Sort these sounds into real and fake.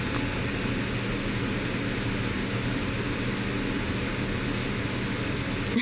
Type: real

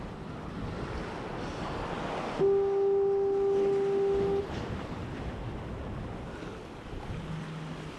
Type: real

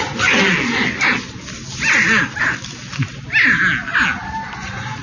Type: real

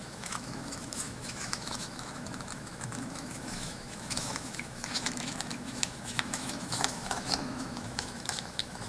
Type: fake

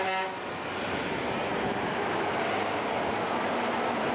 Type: real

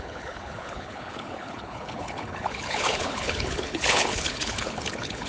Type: fake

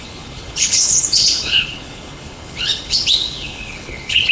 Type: fake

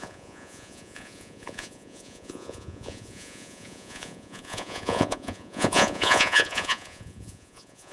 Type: fake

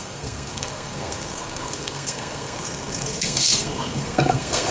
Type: fake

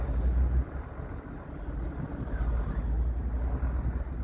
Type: real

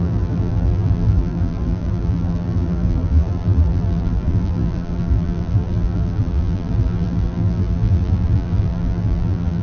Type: fake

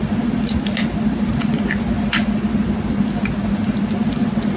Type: real